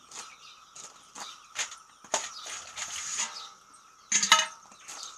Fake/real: real